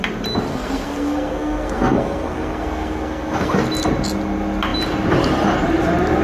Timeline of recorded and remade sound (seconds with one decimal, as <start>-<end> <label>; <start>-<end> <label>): 0.0-0.5 recorded; 0.5-3.6 remade; 3.6-6.2 recorded

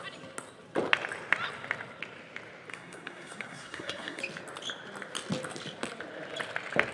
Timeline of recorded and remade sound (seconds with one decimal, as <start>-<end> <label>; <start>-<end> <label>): 0.0-2.7 recorded; 2.7-4.2 remade; 4.2-6.9 recorded